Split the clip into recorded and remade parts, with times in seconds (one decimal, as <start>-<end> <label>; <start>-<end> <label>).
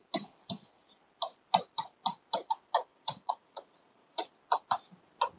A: 0.0-2.9 recorded; 2.9-4.3 remade; 4.3-5.4 recorded